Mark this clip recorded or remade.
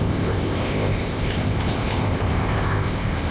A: remade